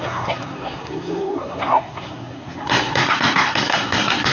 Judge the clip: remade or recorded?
remade